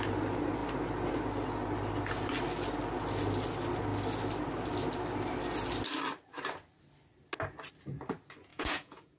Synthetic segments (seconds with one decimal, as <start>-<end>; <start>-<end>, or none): 8.5-9.2